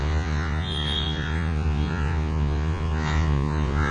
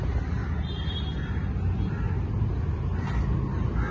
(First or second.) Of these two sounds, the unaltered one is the second